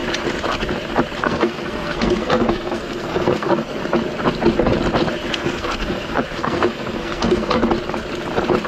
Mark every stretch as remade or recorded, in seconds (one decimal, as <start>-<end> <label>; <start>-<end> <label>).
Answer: 0.0-1.2 recorded; 1.2-3.8 remade; 3.8-5.3 recorded; 5.3-7.6 remade; 7.6-8.7 recorded